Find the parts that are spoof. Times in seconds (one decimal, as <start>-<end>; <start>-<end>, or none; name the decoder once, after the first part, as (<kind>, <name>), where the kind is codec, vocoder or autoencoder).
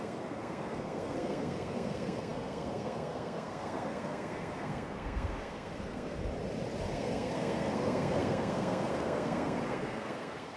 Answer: 0.0-6.2 (codec, SNAC); 6.9-10.6